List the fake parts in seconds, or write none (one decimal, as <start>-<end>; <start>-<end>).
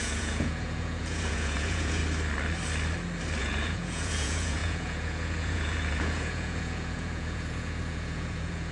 0.0-2.0; 3.4-8.7